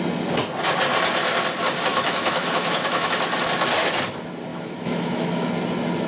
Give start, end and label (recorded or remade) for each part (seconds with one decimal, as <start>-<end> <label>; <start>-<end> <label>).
0.0-1.9 recorded; 1.9-3.1 remade; 3.1-4.5 recorded; 4.5-5.5 remade; 5.5-6.1 recorded